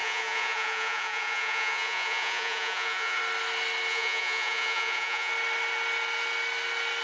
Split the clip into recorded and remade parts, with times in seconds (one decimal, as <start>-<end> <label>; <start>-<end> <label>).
0.0-3.2 remade; 3.2-3.9 recorded; 3.9-5.3 remade; 5.3-7.0 recorded